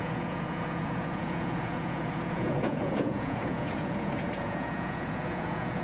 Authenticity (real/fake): fake